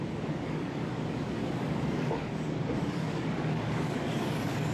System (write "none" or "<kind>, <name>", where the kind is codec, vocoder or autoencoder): codec, DAC